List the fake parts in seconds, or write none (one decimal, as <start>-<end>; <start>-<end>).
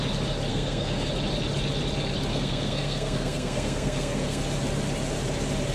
0.5-1.1; 2.3-4.4